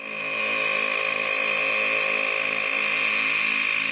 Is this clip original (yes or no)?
yes